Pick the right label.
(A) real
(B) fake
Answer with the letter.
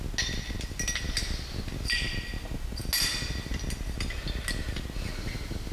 A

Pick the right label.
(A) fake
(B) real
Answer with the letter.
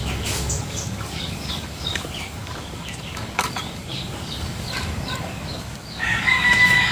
A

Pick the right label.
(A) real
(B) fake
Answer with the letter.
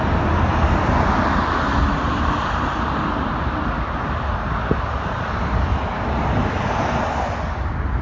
A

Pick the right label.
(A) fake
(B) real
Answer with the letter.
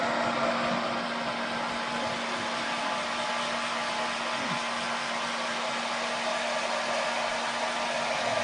B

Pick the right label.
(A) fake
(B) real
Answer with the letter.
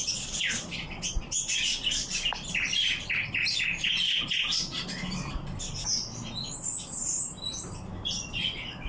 B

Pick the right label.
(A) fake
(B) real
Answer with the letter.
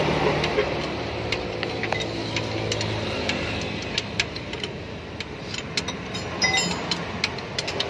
B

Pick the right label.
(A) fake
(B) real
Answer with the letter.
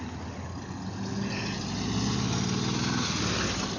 B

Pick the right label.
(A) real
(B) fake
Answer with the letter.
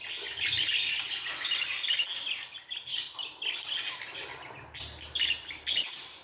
A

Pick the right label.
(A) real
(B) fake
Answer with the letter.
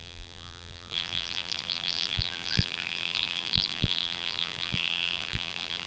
B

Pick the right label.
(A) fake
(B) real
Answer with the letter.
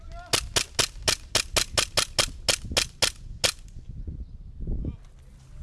B